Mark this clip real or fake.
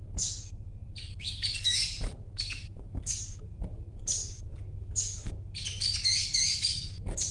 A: fake